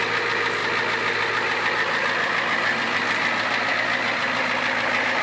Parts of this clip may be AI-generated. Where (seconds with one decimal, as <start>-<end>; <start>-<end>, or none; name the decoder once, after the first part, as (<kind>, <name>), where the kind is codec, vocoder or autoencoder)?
none